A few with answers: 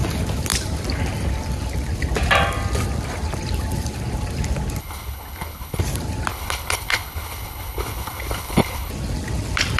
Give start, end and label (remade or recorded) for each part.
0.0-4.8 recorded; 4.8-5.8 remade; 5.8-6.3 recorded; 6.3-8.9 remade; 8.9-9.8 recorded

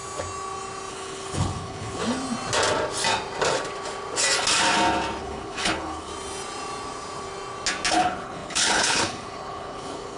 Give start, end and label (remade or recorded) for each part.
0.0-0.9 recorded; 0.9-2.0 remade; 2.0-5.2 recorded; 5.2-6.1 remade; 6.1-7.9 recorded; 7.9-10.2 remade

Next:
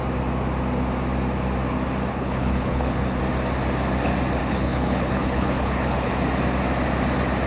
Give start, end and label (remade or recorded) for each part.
0.0-2.1 recorded; 2.1-3.2 remade; 3.2-4.4 recorded; 4.4-6.1 remade; 6.1-7.5 recorded